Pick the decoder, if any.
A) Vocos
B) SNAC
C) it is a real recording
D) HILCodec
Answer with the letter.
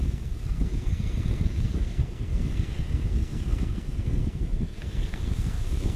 B